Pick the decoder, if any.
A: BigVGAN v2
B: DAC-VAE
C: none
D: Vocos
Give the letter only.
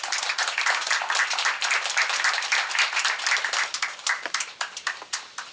C